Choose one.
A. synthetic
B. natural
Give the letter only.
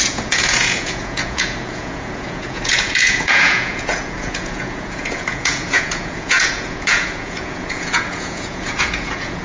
A